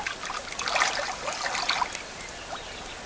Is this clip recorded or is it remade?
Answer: recorded